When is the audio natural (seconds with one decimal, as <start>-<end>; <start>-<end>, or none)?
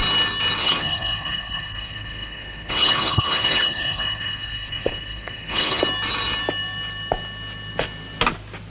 0.0-0.6; 5.8-8.7